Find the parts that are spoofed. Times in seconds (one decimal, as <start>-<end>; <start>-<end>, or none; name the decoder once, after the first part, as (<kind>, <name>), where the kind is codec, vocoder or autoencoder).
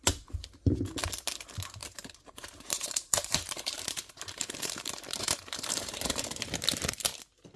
1.8-6.4 (vocoder, BigVGAN v2)